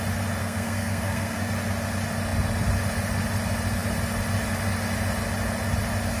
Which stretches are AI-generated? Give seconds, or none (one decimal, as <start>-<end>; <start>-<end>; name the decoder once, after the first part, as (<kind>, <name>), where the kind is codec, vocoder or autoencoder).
0.4-1.5 (codec, SNAC)